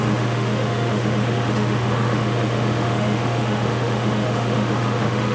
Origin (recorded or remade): remade